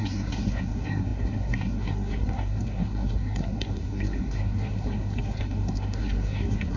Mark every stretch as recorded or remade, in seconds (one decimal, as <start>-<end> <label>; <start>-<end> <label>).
0.0-6.8 remade